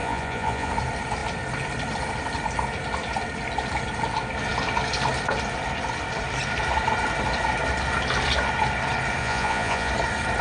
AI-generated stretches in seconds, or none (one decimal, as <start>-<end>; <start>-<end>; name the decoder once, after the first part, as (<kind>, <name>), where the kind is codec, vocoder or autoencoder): 0.0-0.7 (vocoder, Vocos); 9.2-9.9